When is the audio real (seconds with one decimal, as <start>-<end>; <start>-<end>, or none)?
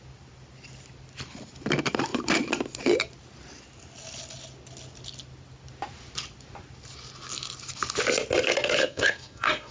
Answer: 0.0-8.8